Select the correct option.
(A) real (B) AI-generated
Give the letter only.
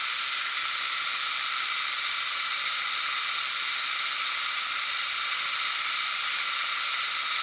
A